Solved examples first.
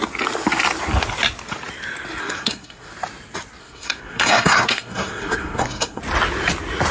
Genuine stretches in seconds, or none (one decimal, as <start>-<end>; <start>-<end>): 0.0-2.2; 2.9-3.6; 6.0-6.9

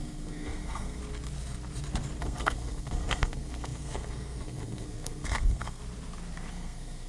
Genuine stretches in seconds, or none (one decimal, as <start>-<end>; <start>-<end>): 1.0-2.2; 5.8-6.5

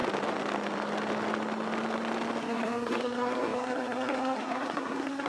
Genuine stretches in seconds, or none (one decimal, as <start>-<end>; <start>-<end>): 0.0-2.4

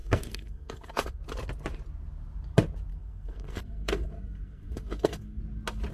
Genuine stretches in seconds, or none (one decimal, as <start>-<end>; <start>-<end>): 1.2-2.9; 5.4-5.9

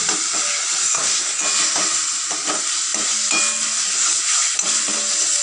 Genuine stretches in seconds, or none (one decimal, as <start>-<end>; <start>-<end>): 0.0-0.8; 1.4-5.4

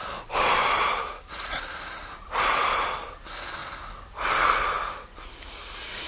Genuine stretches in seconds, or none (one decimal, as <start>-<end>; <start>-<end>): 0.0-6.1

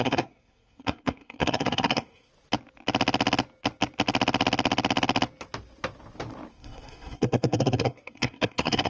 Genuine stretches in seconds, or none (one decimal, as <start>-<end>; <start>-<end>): 2.3-6.5